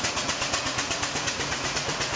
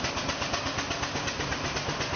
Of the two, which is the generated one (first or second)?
first